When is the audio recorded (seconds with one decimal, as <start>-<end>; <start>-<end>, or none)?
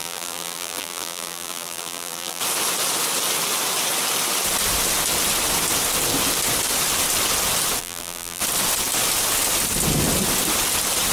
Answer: 2.4-7.8; 8.4-11.1